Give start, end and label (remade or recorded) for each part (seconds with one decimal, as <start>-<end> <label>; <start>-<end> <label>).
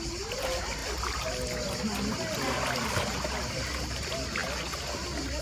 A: 0.0-5.4 recorded